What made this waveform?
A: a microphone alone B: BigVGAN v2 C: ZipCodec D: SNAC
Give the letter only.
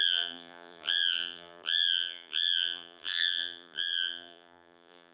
B